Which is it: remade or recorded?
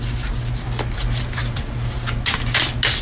recorded